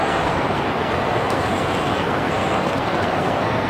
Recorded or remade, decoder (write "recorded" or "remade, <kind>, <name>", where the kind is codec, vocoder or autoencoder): remade, codec, SNAC